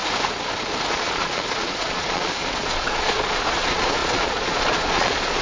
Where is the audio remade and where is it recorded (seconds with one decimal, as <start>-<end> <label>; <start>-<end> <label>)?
0.0-0.9 recorded; 0.9-5.4 remade

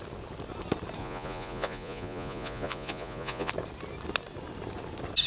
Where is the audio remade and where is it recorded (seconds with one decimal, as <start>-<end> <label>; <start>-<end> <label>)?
0.0-1.0 recorded; 1.0-3.5 remade; 3.5-5.3 recorded

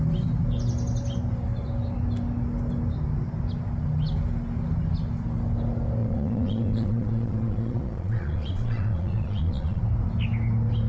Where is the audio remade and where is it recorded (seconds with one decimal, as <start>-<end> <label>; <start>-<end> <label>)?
0.0-6.0 recorded; 6.0-9.8 remade; 9.8-10.9 recorded

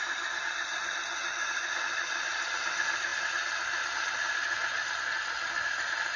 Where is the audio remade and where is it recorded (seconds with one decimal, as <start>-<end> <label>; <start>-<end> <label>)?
0.0-6.2 recorded